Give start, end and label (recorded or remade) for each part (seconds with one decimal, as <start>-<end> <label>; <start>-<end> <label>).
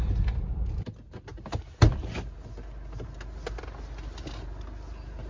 0.0-5.3 recorded